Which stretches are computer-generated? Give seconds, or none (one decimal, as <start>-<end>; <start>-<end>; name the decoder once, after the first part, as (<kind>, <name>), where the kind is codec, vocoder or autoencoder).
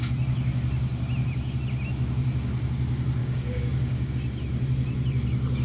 3.2-4.1 (codec, DAC)